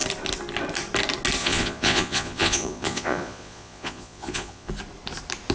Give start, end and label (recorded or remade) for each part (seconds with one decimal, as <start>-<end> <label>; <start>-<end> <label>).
0.0-1.4 recorded; 1.4-4.7 remade; 4.7-5.5 recorded